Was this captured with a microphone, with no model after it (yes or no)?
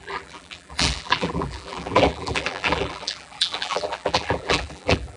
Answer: no